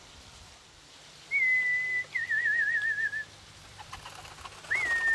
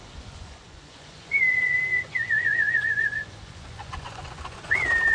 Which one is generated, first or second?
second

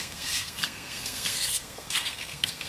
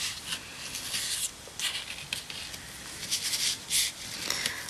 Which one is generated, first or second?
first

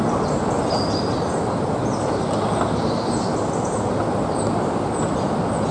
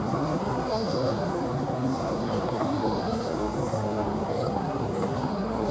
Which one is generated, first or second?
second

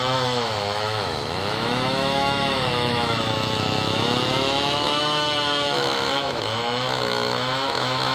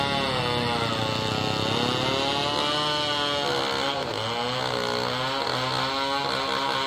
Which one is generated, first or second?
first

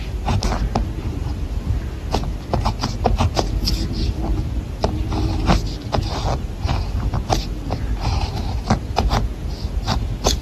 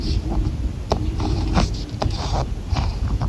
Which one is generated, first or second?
second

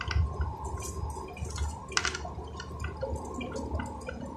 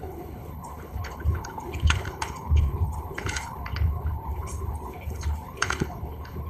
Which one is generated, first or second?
second